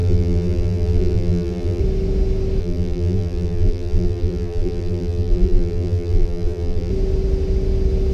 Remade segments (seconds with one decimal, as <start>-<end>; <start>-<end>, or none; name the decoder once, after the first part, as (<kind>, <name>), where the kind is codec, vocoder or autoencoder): 0.0-1.8 (vocoder, BigVGAN v2); 2.6-6.9